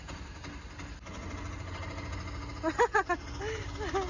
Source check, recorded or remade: recorded